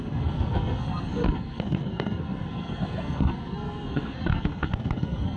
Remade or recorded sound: remade